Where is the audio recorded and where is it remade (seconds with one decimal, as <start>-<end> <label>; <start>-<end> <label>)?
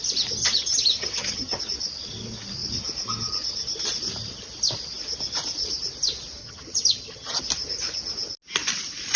0.0-0.4 recorded; 0.4-1.6 remade; 1.6-6.4 recorded; 6.4-7.4 remade; 7.4-9.2 recorded